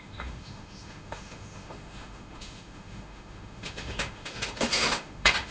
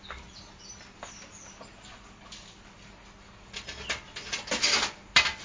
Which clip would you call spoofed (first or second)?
first